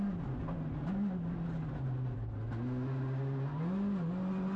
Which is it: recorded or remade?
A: recorded